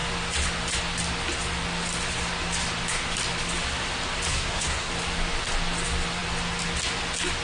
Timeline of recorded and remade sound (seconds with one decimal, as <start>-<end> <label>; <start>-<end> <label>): 0.0-4.3 recorded; 4.3-4.9 remade; 4.9-7.4 recorded